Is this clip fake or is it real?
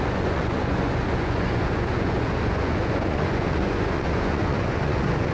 fake